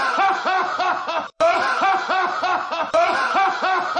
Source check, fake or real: fake